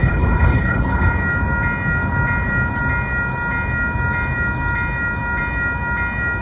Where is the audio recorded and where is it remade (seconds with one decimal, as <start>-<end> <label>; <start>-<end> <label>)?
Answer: 0.0-1.1 remade; 1.1-6.4 recorded